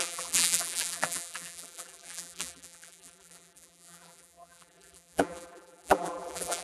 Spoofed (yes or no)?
yes